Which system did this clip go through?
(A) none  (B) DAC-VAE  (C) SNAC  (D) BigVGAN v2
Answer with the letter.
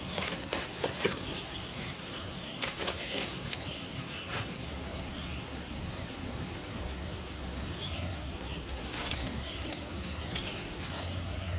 C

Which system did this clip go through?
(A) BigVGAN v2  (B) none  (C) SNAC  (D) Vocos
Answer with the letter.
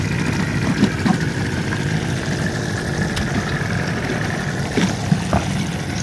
B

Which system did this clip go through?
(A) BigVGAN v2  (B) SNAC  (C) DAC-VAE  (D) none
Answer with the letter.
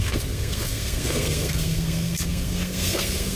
B